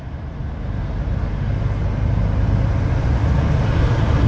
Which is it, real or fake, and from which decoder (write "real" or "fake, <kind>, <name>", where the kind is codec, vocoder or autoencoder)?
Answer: real